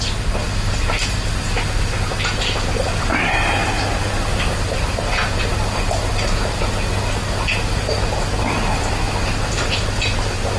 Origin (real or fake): real